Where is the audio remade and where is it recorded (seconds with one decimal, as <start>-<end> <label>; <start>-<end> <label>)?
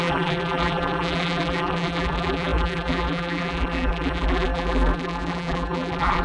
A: 0.0-6.2 remade